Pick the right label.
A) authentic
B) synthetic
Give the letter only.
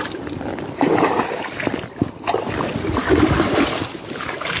A